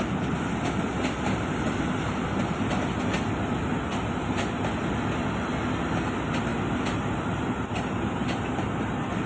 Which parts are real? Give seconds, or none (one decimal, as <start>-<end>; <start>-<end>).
0.0-9.3